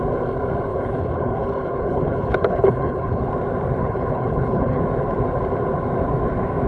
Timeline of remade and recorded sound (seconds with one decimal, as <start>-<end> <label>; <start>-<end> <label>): 0.0-0.7 recorded; 0.7-3.3 remade; 3.3-3.8 recorded; 3.8-4.8 remade; 4.8-6.7 recorded